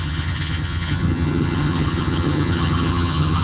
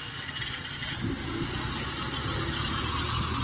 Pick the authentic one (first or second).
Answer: second